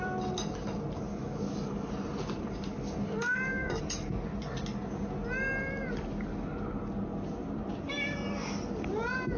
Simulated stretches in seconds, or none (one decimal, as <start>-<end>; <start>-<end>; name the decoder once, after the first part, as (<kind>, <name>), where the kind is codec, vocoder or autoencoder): 1.1-1.9 (codec, DAC); 3.1-3.8